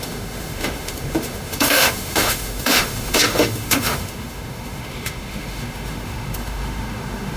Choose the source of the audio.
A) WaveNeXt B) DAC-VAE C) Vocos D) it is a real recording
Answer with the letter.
B